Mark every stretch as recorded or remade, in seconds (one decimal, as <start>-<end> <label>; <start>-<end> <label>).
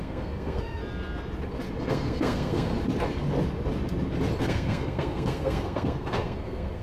0.0-0.8 remade; 0.8-1.8 recorded; 1.8-2.7 remade; 2.7-4.4 recorded; 4.4-6.8 remade